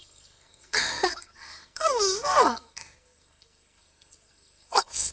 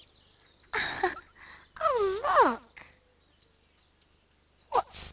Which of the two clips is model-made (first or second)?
first